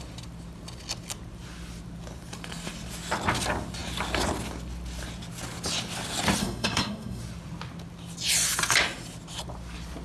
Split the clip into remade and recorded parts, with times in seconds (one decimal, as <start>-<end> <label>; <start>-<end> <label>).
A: 0.0-6.4 recorded; 6.4-7.2 remade; 7.2-10.0 recorded